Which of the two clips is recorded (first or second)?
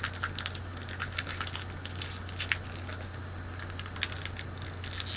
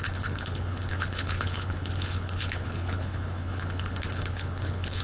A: first